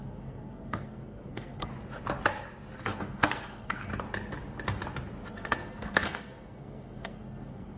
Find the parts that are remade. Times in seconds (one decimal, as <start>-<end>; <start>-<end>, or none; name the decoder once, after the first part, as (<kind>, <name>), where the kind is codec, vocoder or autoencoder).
0.0-1.7 (codec, SNAC); 2.8-3.9; 5.3-7.8